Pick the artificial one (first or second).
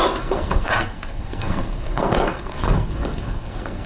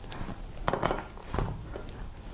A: first